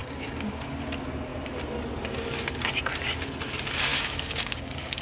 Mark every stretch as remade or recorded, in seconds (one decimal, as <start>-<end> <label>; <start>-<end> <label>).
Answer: 0.0-0.6 remade; 0.6-3.9 recorded; 3.9-5.0 remade